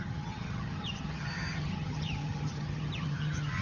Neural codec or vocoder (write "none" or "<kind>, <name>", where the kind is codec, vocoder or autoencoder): vocoder, HiFi-GAN